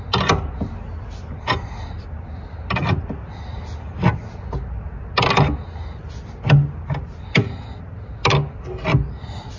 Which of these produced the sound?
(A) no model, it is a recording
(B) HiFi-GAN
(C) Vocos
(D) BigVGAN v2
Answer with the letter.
A